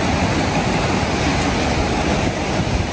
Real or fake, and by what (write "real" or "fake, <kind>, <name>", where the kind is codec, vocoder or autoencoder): real